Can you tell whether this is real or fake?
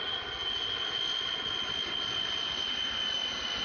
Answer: real